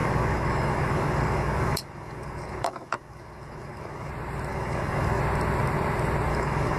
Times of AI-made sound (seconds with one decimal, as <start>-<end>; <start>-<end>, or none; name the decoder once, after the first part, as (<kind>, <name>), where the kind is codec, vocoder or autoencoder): 0.0-4.1 (codec, DAC); 4.5-5.2; 6.3-6.8